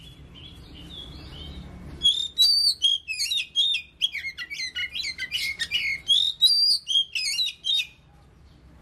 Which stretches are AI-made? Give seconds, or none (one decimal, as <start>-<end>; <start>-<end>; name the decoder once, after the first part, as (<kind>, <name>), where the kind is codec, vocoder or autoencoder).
none